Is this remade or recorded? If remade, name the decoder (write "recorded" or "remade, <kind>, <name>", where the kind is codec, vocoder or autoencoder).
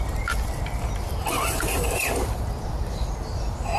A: recorded